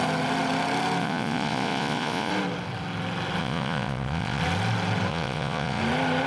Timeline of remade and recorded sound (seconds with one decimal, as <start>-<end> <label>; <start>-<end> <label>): 0.0-1.0 recorded; 1.0-2.3 remade; 2.3-3.4 recorded; 3.4-4.4 remade; 4.4-5.1 recorded; 5.1-5.8 remade; 5.8-6.3 recorded